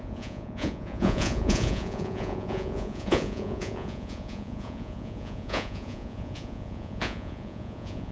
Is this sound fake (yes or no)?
yes